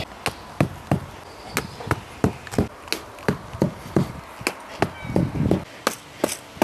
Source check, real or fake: real